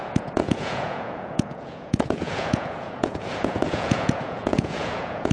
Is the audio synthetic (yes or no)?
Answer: yes